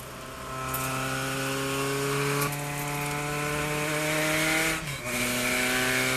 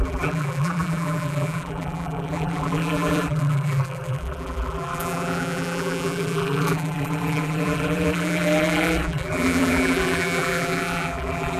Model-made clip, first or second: second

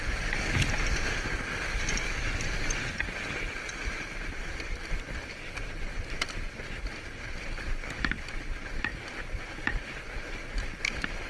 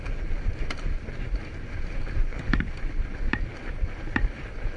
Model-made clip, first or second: first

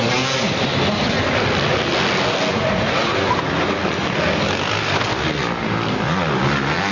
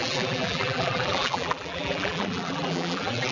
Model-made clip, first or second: second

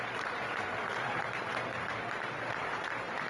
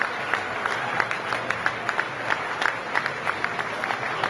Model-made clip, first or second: first